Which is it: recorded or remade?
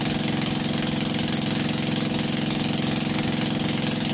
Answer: recorded